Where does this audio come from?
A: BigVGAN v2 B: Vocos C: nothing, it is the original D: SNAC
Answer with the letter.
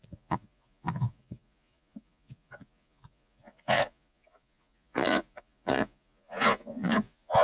B